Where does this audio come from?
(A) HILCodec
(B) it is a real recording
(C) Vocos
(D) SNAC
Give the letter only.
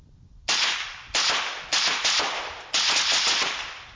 B